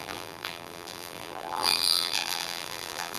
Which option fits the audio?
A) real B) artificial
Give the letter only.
B